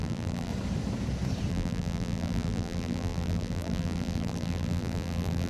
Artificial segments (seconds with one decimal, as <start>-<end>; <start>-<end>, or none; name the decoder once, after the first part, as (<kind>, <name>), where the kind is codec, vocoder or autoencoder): 0.0-0.5 (vocoder, BigVGAN v2); 1.5-5.5